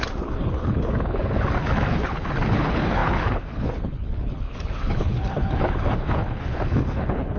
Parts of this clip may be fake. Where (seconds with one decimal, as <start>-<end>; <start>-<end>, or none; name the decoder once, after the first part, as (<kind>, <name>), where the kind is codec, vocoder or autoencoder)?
0.0-7.4 (codec, HILCodec)